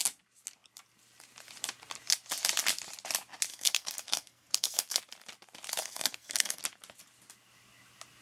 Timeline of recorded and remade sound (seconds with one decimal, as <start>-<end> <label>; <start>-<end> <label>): 0.0-3.5 recorded; 3.5-5.0 remade; 5.0-5.8 recorded; 5.8-6.6 remade; 6.6-8.2 recorded